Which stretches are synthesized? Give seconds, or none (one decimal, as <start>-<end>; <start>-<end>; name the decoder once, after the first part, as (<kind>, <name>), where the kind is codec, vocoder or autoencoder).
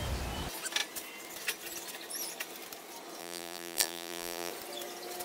3.2-4.5 (vocoder, BigVGAN v2)